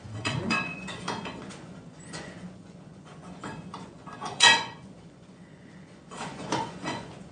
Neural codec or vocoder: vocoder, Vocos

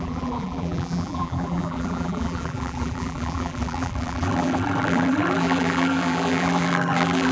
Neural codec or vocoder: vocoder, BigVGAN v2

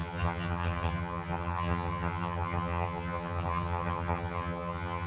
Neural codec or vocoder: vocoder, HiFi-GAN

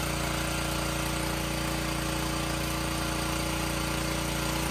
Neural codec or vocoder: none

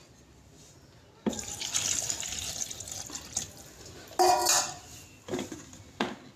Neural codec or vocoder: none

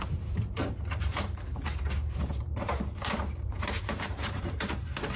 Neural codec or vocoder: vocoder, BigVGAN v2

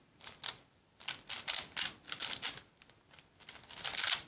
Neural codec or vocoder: none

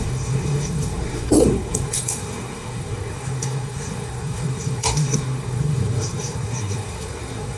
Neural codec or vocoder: codec, SNAC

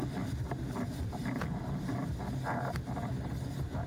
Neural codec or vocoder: none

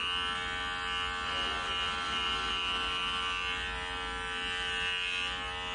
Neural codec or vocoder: none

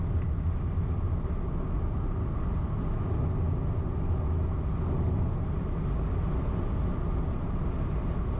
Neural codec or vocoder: none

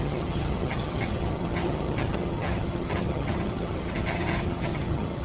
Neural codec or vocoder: vocoder, HiFi-GAN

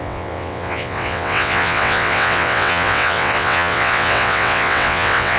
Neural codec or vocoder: vocoder, WaveNeXt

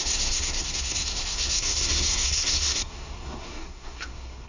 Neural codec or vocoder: codec, SNAC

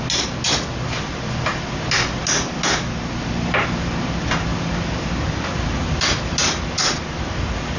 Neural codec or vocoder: none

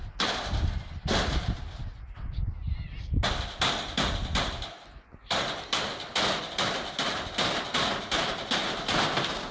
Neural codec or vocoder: none